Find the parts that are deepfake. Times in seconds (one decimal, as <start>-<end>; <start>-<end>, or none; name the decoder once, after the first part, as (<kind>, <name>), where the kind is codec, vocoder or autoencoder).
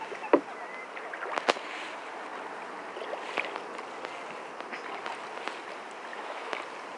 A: 6.1-6.6 (autoencoder, DAC-VAE)